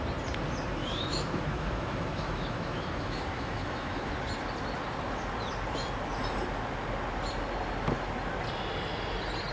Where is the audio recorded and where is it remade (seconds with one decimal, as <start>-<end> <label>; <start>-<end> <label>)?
0.0-0.8 recorded; 0.8-4.1 remade; 4.1-9.5 recorded